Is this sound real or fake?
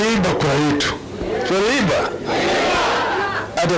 real